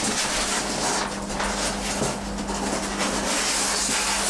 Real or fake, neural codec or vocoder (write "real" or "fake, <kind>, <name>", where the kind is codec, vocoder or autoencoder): real